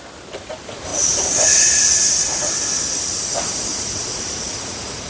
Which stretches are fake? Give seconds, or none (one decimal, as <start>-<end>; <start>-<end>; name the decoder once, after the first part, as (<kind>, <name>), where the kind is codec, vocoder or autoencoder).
0.9-2.5 (vocoder, Vocos); 3.7-5.1

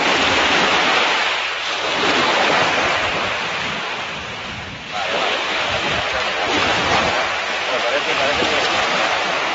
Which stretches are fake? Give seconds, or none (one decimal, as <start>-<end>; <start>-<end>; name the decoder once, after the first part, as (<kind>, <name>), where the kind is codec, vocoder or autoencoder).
0.0-4.2 (vocoder, BigVGAN v2); 6.5-9.5

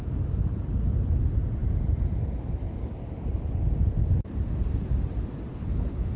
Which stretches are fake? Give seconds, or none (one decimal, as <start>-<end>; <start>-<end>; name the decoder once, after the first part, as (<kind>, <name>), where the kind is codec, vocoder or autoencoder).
5.5-6.2 (codec, HILCodec)

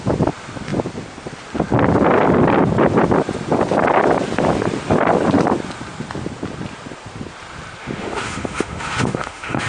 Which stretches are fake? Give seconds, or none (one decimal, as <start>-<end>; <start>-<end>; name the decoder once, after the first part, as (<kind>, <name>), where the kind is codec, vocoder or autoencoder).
7.8-9.7 (autoencoder, DAC-VAE)

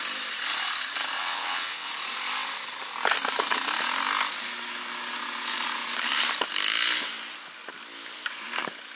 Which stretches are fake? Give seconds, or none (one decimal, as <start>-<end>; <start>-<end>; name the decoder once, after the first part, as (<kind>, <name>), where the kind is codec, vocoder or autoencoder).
1.2-1.9 (vocoder, WaveNeXt)

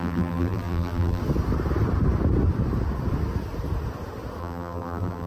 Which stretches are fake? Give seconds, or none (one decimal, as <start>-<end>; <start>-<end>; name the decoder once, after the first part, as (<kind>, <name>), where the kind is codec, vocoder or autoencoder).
0.0-1.2 (vocoder, BigVGAN v2); 4.4-5.3

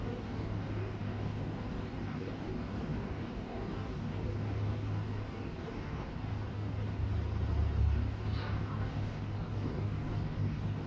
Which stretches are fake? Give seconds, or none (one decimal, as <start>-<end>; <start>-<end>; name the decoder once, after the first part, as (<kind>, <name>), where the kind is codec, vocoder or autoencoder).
0.0-7.1 (codec, DAC); 7.8-10.9

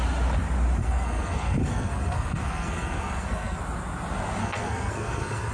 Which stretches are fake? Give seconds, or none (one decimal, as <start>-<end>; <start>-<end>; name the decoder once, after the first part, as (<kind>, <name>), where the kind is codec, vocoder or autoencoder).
0.8-3.6 (codec, SNAC); 4.4-5.5